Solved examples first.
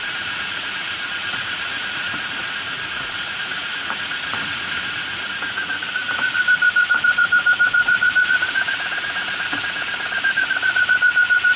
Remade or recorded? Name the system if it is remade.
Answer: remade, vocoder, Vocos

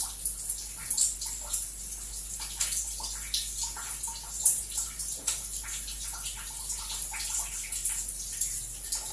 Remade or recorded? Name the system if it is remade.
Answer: recorded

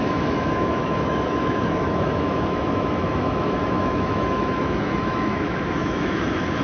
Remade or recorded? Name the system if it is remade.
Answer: remade, autoencoder, DAC-VAE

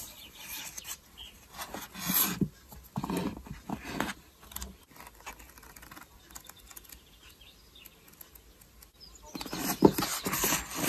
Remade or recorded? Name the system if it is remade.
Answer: recorded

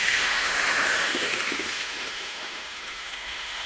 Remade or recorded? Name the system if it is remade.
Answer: remade, autoencoder, DAC-VAE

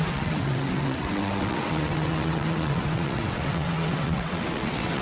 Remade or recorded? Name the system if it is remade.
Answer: remade, vocoder, WaveNeXt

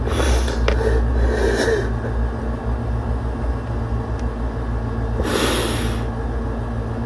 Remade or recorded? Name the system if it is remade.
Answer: recorded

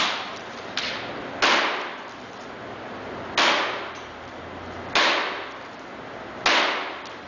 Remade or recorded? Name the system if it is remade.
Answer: recorded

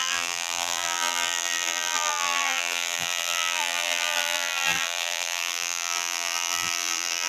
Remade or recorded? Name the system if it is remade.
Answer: remade, vocoder, BigVGAN v2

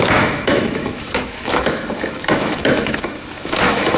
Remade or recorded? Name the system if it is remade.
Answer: remade, autoencoder, DAC-VAE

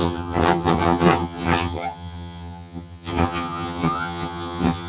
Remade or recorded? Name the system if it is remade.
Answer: remade, vocoder, HiFi-GAN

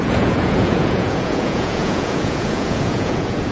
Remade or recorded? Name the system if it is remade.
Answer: remade, vocoder, Vocos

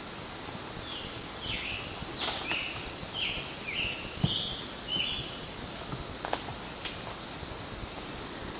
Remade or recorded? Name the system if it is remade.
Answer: recorded